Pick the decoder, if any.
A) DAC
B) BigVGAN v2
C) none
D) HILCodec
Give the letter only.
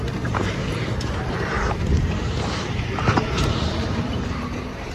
B